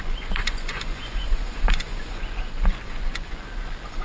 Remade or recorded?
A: remade